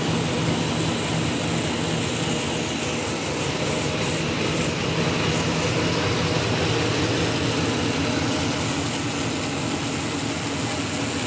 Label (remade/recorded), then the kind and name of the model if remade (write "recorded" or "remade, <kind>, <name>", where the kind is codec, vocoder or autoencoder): recorded